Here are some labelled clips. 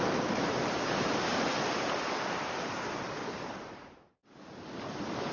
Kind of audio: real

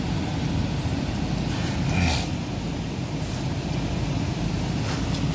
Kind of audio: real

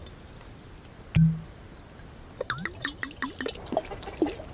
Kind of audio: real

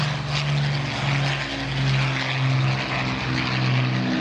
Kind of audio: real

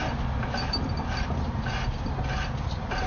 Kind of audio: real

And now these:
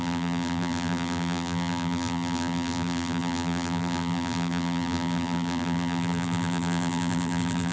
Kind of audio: fake